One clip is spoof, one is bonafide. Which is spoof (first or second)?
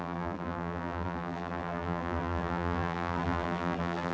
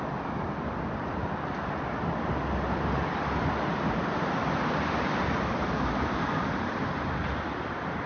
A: first